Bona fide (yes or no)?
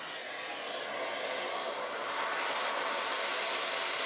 yes